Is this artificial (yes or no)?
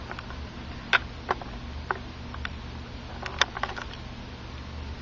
no